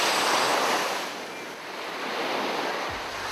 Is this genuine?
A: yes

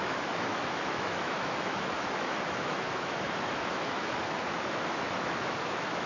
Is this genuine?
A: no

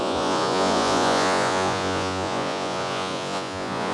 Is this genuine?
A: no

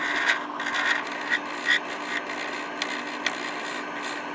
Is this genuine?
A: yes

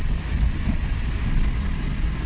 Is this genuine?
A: yes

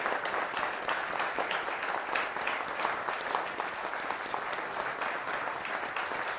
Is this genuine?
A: yes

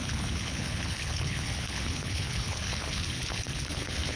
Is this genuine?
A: no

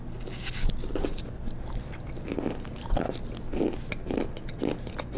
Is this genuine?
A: yes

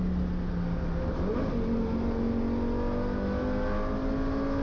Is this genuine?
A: yes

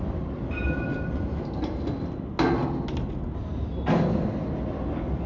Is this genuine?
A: yes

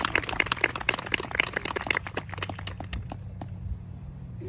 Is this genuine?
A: yes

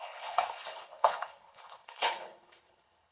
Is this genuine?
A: no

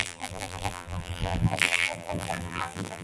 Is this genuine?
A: no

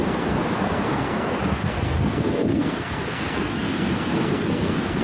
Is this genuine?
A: no